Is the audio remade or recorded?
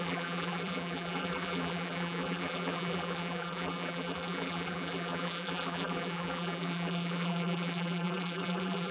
remade